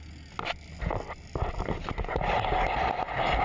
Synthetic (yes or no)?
no